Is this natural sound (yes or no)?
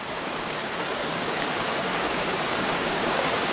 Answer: no